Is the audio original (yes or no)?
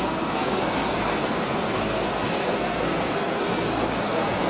no